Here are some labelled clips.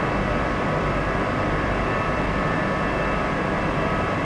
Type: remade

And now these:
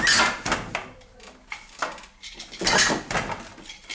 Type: recorded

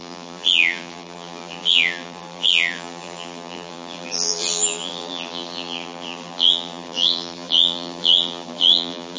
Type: remade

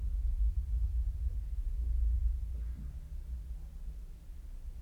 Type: recorded